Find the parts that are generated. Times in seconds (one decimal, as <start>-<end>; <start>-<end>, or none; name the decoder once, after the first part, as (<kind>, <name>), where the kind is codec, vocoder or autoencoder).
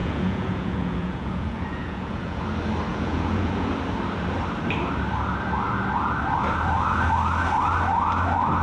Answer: 0.0-2.4 (vocoder, Vocos); 2.9-3.7